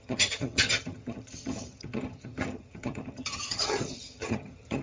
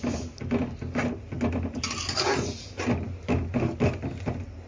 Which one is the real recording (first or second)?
second